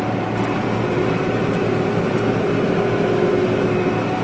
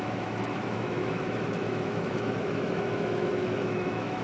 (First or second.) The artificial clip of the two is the second